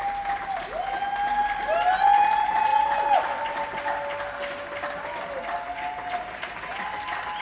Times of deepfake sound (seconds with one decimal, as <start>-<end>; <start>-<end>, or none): none